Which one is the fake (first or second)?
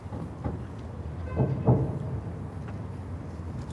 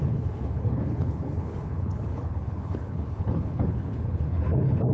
second